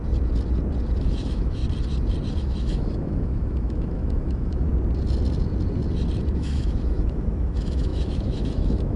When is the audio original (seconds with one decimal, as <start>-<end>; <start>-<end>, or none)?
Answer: 0.0-0.9; 1.6-2.4; 4.7-6.3